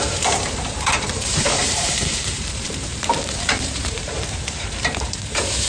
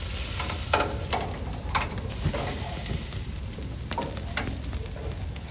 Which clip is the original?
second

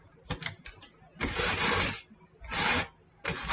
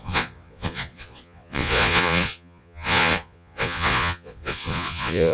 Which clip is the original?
first